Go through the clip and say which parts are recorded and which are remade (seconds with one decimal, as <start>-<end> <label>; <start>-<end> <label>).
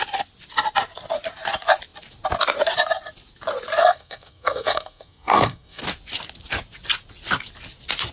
0.0-3.8 recorded; 3.8-5.8 remade; 5.8-8.1 recorded